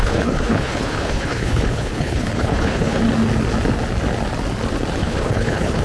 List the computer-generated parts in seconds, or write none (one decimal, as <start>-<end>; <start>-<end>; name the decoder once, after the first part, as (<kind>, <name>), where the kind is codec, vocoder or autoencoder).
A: 0.0-3.0 (codec, HILCodec); 5.0-5.8